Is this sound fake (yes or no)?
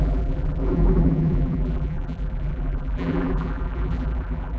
yes